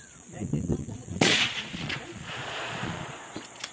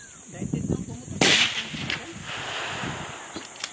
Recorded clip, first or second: second